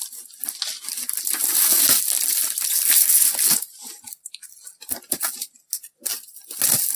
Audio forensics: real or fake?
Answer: real